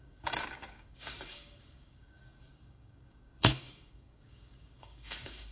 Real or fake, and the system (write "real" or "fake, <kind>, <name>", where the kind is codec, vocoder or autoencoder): fake, codec, DAC